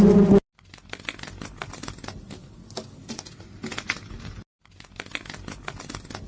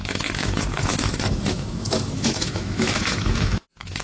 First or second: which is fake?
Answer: second